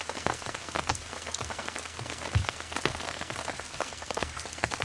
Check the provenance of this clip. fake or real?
fake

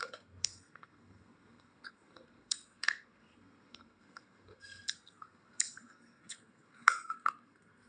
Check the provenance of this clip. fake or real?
fake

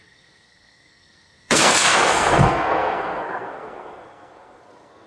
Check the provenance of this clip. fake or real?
fake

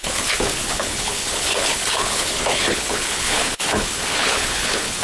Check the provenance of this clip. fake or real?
fake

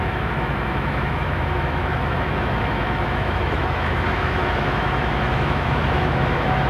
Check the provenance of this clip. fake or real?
fake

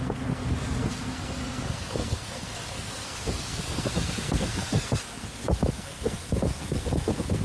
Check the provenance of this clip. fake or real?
fake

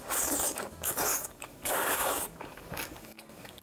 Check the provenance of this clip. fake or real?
fake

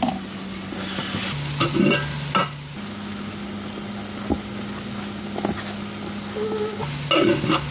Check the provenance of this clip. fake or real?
real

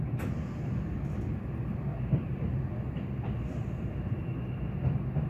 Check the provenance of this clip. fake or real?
real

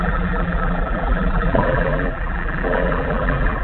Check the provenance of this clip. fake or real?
fake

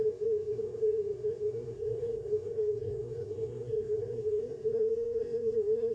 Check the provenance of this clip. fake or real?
fake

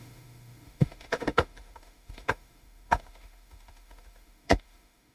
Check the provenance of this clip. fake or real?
fake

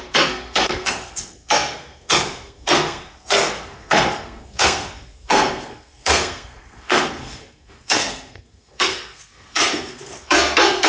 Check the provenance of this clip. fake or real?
fake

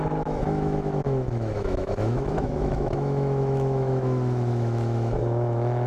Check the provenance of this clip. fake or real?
fake